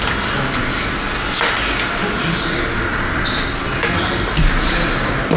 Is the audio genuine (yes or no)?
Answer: yes